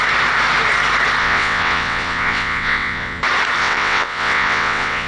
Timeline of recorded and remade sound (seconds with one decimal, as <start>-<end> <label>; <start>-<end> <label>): 0.0-1.2 recorded; 1.2-3.2 remade; 3.2-3.6 recorded; 3.6-5.1 remade